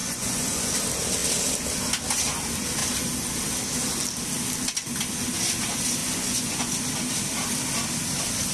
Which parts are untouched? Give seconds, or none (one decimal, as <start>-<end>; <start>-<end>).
0.7-6.0; 6.7-8.5